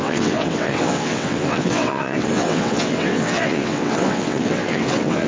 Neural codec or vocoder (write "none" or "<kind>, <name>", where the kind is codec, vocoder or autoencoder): vocoder, WaveNeXt